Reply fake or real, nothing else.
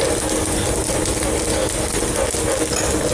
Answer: real